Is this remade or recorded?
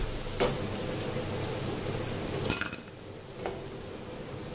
recorded